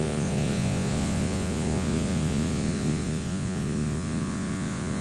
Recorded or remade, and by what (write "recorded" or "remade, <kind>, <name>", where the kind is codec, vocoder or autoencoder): remade, vocoder, Vocos